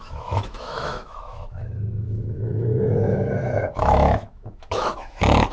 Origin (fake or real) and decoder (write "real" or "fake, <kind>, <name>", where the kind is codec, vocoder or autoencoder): fake, autoencoder, DAC-VAE